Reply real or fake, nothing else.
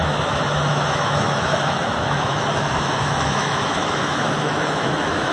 fake